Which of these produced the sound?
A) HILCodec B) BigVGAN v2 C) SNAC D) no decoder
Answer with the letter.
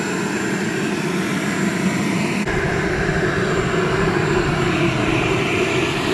D